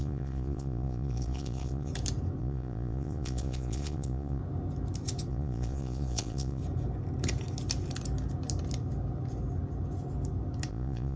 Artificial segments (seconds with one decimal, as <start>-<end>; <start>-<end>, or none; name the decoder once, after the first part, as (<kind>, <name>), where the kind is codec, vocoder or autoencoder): 0.0-1.9 (vocoder, Vocos); 2.4-4.4; 5.3-6.6; 10.7-11.2